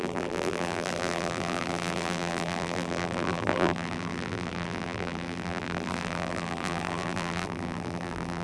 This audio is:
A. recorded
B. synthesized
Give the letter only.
B